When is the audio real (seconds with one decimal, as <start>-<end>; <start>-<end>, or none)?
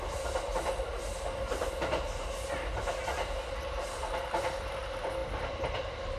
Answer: 0.0-6.2